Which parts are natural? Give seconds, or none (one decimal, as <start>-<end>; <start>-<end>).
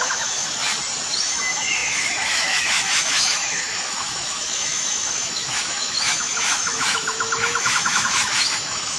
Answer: 0.6-1.2